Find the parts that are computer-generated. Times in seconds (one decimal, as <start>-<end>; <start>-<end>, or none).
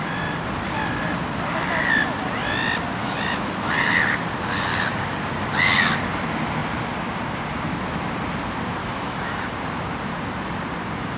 3.0-3.5; 8.8-9.5